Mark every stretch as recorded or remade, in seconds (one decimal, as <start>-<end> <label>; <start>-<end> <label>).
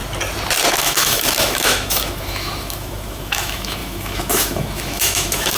0.0-0.7 recorded; 0.7-5.6 remade